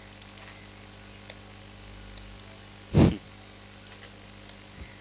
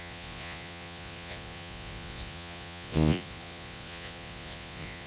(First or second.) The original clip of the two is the first